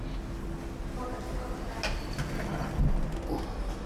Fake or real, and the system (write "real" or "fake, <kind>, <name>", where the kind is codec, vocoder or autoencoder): real